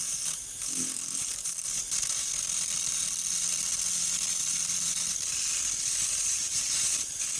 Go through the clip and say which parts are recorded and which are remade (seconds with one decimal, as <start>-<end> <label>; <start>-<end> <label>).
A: 0.0-2.3 remade; 2.3-6.1 recorded; 6.1-7.4 remade